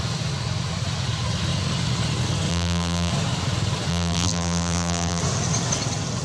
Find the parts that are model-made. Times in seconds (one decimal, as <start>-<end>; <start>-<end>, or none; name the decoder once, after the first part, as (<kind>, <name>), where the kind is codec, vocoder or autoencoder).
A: 2.5-3.1 (vocoder, BigVGAN v2); 3.9-5.2